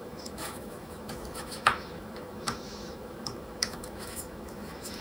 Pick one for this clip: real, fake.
fake